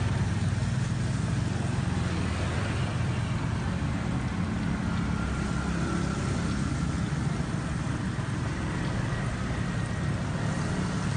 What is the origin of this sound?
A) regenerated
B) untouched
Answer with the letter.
B